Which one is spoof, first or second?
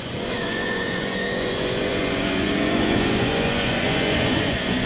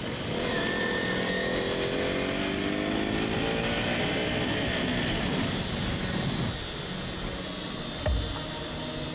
first